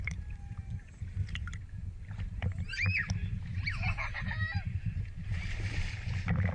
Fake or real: fake